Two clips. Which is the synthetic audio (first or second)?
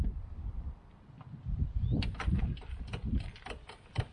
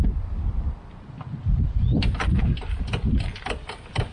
first